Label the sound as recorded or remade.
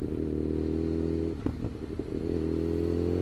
recorded